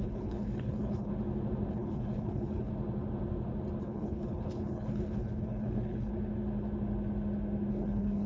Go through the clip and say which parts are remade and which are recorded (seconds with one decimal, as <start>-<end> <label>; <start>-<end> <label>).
0.0-1.1 remade; 1.1-1.7 recorded; 1.7-2.7 remade; 2.7-3.8 recorded; 3.8-6.1 remade; 6.1-7.7 recorded; 7.7-8.3 remade